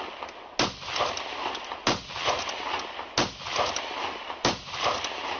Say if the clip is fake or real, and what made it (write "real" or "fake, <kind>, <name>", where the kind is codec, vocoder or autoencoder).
real